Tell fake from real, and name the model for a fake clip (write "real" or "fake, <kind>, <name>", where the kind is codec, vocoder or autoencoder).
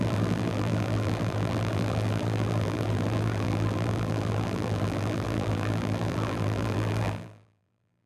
fake, vocoder, BigVGAN v2